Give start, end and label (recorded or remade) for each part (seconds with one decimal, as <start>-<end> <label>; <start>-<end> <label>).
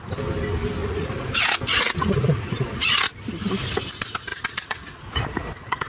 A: 0.0-0.8 recorded; 0.8-1.3 remade; 1.3-2.0 recorded; 2.0-2.9 remade; 2.9-4.3 recorded; 4.3-5.9 remade